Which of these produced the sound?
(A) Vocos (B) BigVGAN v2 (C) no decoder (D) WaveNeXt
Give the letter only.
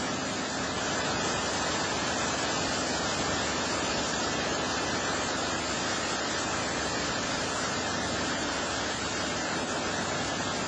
C